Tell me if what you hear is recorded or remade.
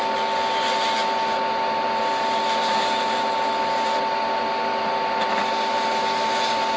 recorded